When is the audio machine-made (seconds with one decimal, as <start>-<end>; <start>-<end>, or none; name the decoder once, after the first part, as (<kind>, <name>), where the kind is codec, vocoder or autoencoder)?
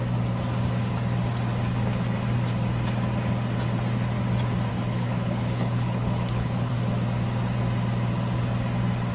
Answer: 4.7-6.7 (codec, HILCodec)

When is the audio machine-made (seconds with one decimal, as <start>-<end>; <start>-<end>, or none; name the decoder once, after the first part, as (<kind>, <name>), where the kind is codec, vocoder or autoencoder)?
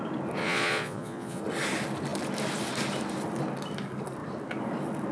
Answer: 0.4-1.4 (vocoder, Vocos)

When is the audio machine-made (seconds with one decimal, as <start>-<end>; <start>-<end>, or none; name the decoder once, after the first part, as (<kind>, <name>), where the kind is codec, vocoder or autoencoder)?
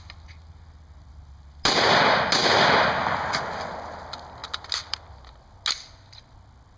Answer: none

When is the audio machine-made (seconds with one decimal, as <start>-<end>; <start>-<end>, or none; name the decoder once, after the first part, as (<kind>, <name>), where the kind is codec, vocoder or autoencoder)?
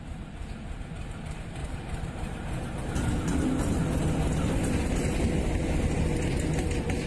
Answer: 1.6-2.8 (vocoder, BigVGAN v2)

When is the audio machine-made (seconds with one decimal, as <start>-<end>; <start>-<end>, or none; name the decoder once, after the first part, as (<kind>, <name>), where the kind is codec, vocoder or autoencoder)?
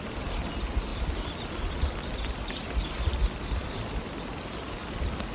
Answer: none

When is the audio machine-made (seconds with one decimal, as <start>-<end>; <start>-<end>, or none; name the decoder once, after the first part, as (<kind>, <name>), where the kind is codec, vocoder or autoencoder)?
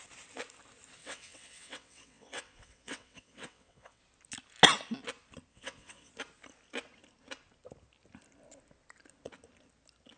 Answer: 1.0-4.0 (vocoder, WaveNeXt); 5.5-6.1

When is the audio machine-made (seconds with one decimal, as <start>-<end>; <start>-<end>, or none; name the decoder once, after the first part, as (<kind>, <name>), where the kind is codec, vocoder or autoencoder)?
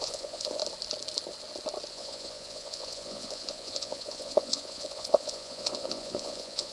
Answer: 0.0-0.6 (vocoder, Vocos); 1.9-6.7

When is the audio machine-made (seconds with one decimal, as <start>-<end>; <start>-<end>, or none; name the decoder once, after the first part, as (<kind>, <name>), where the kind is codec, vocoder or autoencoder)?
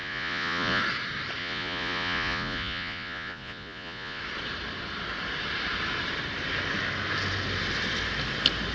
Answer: 0.0-0.8 (vocoder, Vocos); 1.4-4.2